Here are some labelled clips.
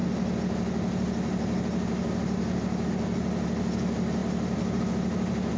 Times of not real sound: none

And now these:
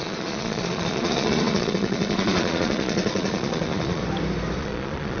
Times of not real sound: 0.0-4.0 (vocoder, Vocos); 4.6-5.2

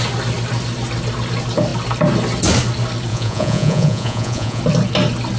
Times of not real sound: 3.1-4.6 (vocoder, Vocos)

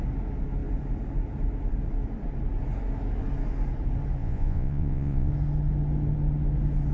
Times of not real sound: 4.2-5.3 (vocoder, Vocos)

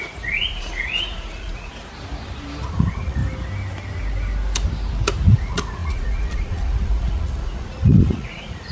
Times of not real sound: 0.0-1.7 (vocoder, Vocos); 2.7-3.2; 5.3-8.7

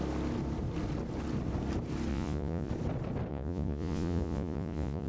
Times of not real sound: 2.1-2.7 (vocoder, Vocos); 3.3-5.1